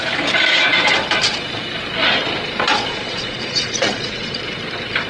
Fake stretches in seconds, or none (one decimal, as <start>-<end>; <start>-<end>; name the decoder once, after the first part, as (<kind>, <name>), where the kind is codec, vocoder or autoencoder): 2.9-4.4 (vocoder, Vocos)